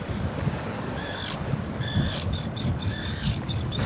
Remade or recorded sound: remade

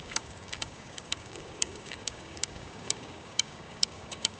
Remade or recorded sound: remade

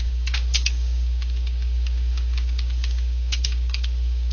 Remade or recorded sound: remade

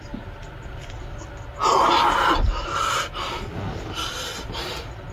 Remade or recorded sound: recorded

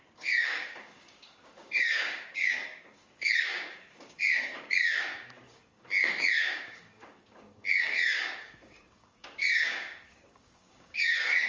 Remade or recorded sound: remade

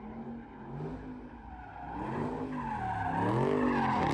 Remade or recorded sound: recorded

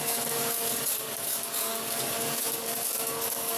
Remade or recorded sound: remade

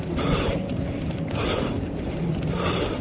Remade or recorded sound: recorded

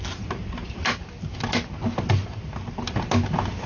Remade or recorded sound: recorded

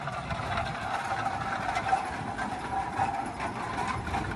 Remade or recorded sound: recorded